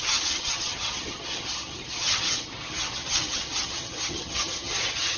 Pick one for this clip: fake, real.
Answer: fake